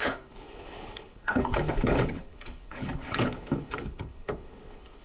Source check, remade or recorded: remade